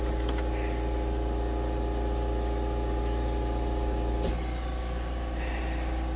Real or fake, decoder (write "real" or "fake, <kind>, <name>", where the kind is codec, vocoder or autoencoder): real